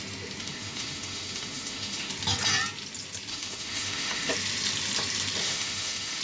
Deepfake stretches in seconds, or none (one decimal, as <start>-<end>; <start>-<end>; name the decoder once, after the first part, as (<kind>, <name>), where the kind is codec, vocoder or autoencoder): 0.4-2.1 (autoencoder, DAC-VAE); 3.3-4.3; 5.4-6.2